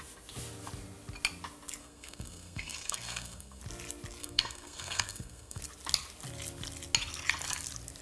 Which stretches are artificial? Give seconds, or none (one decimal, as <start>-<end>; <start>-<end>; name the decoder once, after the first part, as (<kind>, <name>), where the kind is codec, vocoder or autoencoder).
1.8-3.6 (codec, SNAC); 4.2-5.6